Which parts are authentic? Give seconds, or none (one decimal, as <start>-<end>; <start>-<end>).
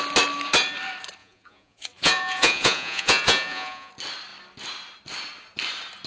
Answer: 0.0-1.2; 3.9-6.1